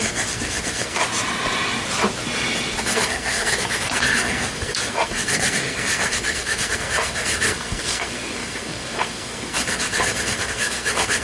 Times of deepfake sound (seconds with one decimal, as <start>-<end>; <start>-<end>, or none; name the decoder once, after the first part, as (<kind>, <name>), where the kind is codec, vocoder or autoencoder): 0.0-1.0 (codec, SNAC); 2.8-11.2